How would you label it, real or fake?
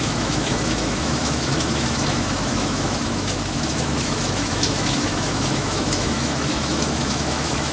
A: fake